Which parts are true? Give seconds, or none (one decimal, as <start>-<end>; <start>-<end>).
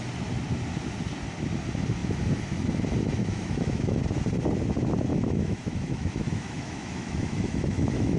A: 0.0-3.2; 4.0-5.1